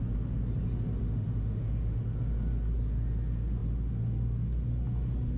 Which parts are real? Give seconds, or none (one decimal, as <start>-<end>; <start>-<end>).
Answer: 0.0-1.0; 2.0-5.4